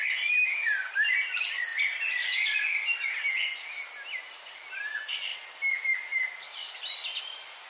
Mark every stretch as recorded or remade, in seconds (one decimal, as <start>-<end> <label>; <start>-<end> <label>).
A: 0.0-1.7 recorded; 1.7-3.1 remade; 3.1-7.7 recorded